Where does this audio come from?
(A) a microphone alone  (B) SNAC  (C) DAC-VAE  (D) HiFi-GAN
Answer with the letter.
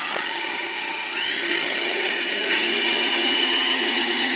D